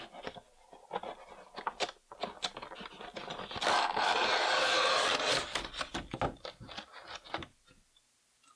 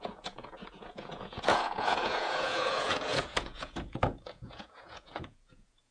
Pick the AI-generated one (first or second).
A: second